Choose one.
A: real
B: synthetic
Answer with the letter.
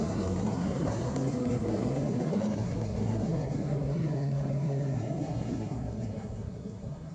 B